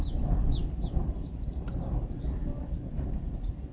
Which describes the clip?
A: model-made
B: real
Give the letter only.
B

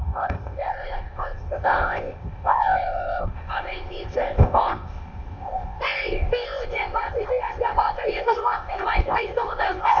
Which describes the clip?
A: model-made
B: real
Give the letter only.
A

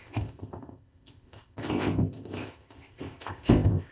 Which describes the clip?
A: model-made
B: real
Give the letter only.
A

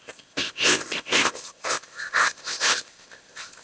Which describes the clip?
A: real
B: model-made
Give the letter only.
B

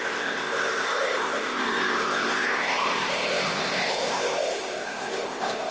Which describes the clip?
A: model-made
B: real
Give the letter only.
A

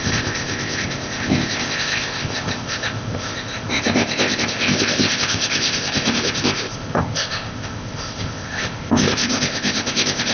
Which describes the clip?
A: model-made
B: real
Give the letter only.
A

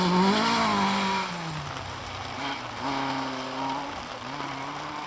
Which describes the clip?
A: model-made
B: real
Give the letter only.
B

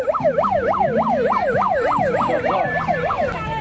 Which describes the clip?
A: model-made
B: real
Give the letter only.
B